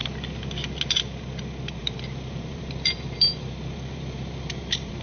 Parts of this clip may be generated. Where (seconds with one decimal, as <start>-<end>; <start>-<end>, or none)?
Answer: 1.8-5.0